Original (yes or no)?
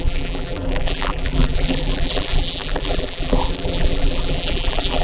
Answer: no